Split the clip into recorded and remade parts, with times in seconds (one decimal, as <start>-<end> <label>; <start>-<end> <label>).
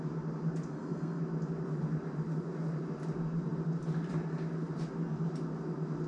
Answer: 0.0-0.7 recorded; 0.7-1.2 remade; 1.2-6.1 recorded